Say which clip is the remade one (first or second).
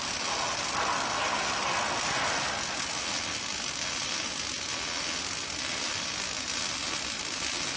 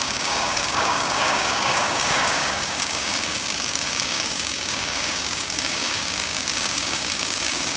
second